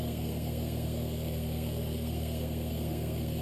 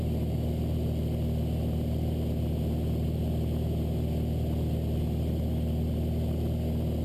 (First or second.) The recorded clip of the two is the second